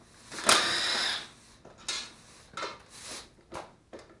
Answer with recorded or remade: recorded